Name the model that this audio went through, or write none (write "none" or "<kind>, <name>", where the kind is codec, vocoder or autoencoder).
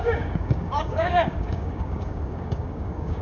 codec, DAC